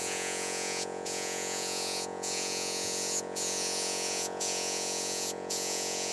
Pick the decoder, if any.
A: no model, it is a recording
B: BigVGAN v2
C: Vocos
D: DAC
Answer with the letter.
C